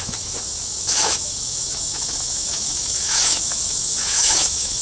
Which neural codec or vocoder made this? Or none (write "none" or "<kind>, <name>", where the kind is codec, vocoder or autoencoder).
autoencoder, DAC-VAE